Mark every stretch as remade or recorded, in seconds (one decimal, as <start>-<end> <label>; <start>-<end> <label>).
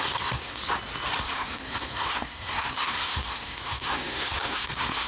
0.0-0.6 remade; 0.6-1.2 recorded; 1.2-5.1 remade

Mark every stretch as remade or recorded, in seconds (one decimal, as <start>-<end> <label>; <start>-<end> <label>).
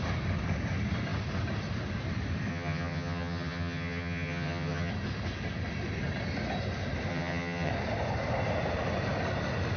0.0-2.5 recorded; 2.5-4.9 remade; 4.9-7.1 recorded; 7.1-7.7 remade; 7.7-9.8 recorded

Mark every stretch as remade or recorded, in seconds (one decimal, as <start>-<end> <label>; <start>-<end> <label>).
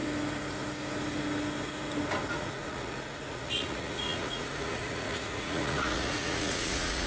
0.0-2.3 recorded; 2.3-7.1 remade